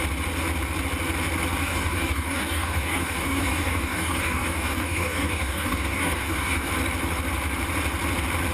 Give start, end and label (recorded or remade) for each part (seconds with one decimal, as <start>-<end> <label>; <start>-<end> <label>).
0.0-1.6 recorded; 1.6-6.7 remade; 6.7-8.5 recorded